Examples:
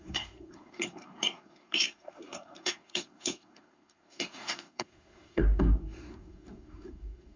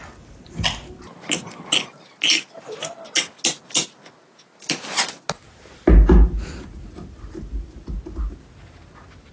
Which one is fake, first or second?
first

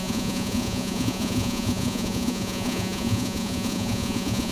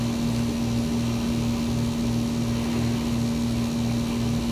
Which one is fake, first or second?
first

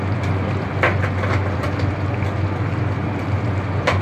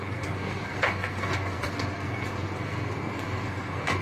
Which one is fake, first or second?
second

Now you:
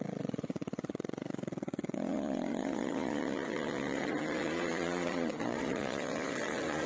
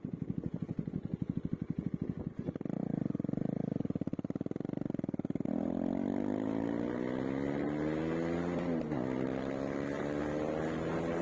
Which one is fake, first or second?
first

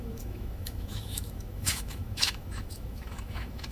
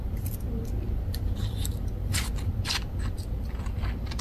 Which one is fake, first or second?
first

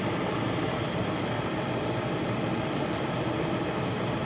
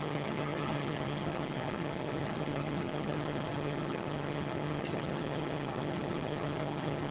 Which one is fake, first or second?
second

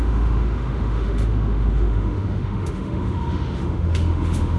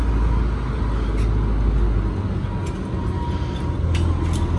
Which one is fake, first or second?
first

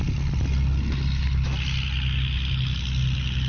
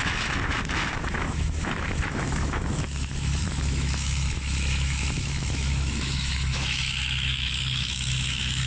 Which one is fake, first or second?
second